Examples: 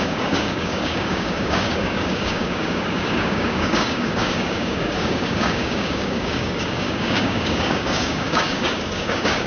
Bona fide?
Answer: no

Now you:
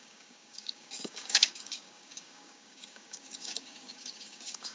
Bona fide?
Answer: no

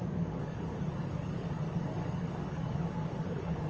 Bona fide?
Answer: no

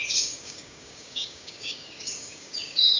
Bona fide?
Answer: no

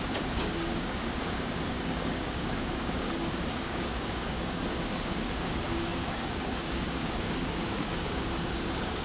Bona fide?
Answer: no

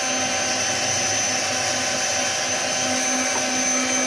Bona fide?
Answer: yes